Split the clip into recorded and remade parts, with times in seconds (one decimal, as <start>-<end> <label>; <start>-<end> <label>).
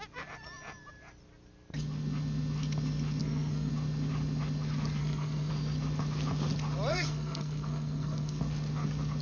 0.0-3.2 recorded; 3.2-3.7 remade; 3.7-5.0 recorded; 5.0-5.5 remade; 5.5-6.9 recorded; 6.9-8.4 remade; 8.4-9.2 recorded